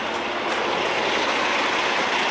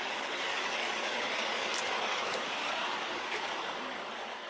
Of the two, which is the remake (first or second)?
second